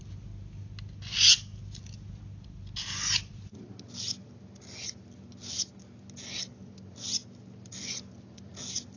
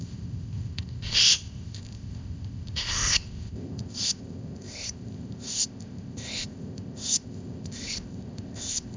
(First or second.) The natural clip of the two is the first